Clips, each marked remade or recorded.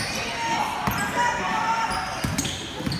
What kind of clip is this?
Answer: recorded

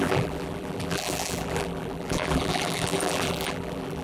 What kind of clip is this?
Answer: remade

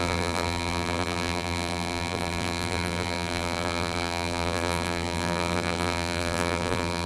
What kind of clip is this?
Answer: remade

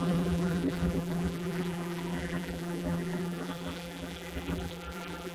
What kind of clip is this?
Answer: remade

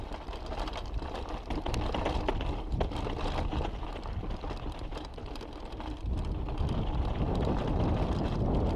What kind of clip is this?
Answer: recorded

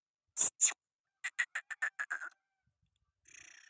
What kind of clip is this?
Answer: recorded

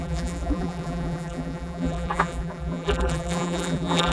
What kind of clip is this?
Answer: remade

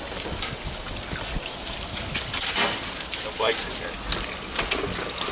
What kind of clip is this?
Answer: recorded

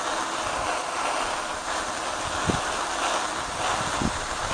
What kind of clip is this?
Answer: recorded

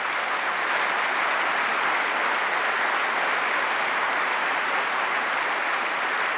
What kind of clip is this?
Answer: recorded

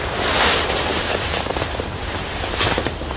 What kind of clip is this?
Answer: remade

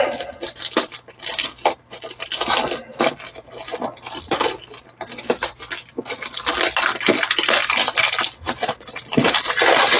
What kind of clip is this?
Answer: recorded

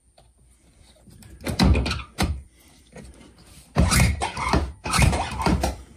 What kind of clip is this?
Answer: remade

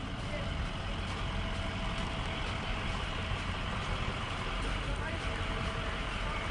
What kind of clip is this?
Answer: recorded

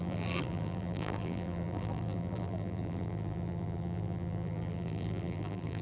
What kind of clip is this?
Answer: remade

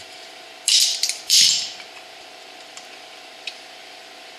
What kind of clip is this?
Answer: remade